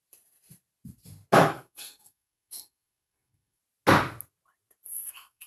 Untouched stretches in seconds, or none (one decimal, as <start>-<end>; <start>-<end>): 0.0-1.4; 3.6-4.9